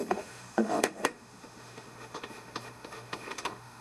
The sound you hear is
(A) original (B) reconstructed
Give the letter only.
B